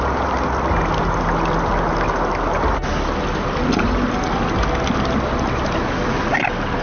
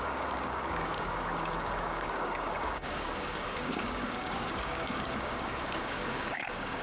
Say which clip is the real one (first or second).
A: first